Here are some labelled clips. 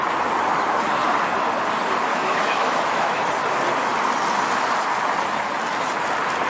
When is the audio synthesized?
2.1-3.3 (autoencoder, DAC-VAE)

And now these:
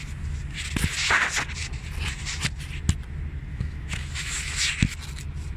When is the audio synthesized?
3.5-4.7 (autoencoder, DAC-VAE)